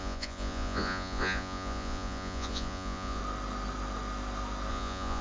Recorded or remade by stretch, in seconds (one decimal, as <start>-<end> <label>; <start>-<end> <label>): 0.0-3.2 remade; 3.2-4.7 recorded; 4.7-5.2 remade